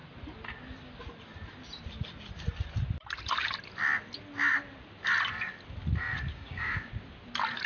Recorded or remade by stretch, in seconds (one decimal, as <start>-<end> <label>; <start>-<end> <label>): 0.0-6.3 recorded; 6.3-6.9 remade; 6.9-7.7 recorded

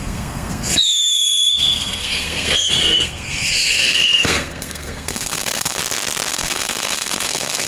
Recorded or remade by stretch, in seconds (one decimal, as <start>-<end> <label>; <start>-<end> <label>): 0.0-5.8 remade; 5.8-6.3 recorded; 6.3-7.7 remade

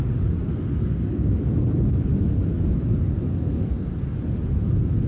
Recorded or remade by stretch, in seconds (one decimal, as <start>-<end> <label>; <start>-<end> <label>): 0.0-0.4 recorded; 0.4-1.3 remade; 1.3-3.3 recorded; 3.3-3.9 remade; 3.9-5.1 recorded